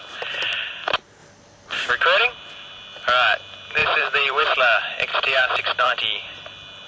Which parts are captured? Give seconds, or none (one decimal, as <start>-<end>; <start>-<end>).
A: 0.0-3.8; 4.6-5.1; 6.0-6.9